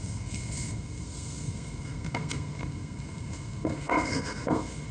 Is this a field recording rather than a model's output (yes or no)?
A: no